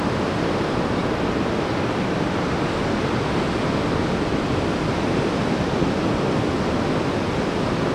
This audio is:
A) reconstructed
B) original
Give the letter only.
B